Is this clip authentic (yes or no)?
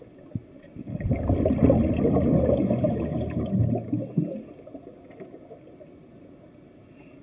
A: yes